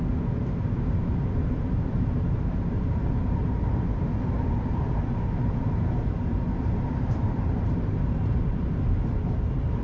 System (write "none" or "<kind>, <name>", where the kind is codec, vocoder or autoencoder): vocoder, BigVGAN v2